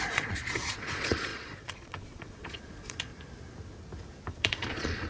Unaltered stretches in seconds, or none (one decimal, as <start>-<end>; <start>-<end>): 3.1-4.3